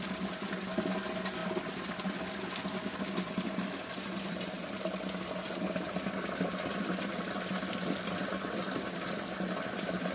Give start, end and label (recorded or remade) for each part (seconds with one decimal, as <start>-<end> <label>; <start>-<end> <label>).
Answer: 0.0-10.1 recorded